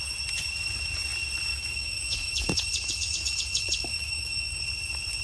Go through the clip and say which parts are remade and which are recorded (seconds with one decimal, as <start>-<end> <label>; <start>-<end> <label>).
0.0-1.5 recorded; 1.5-4.6 remade; 4.6-5.2 recorded